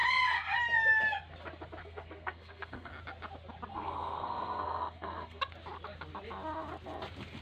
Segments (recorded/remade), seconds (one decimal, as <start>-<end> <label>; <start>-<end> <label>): 0.0-1.8 recorded; 1.8-2.9 remade; 2.9-3.7 recorded; 3.7-5.4 remade; 5.4-7.4 recorded